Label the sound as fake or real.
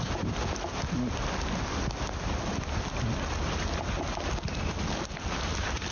real